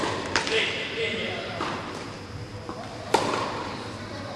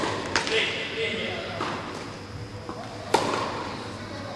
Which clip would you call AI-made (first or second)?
first